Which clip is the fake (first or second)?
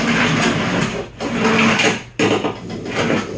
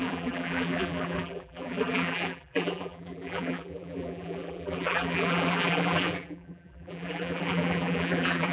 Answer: second